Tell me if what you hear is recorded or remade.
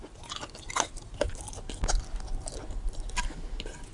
recorded